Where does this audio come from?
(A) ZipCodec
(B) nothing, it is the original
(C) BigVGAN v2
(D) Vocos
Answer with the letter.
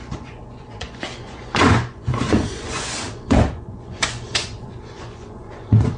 D